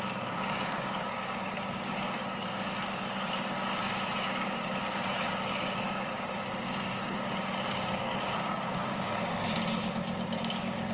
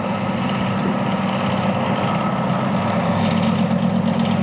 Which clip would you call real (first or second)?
second